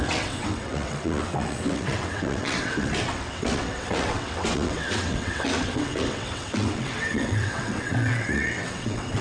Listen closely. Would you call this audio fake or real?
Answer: fake